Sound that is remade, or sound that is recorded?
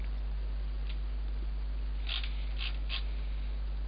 recorded